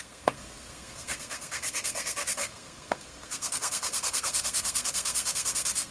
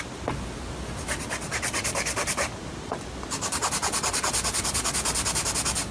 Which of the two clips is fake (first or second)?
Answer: first